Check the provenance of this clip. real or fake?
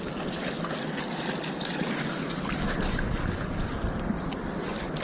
real